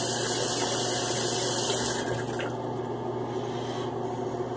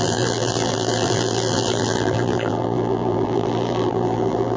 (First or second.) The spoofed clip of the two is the second